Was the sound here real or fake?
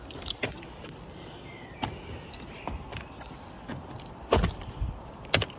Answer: real